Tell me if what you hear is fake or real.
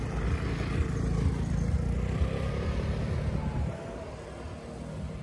real